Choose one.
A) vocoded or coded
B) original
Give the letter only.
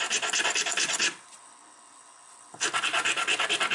B